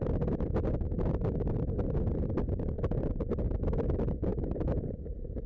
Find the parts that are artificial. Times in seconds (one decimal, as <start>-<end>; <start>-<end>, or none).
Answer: 4.3-5.5